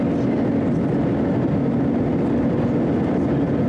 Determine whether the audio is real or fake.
real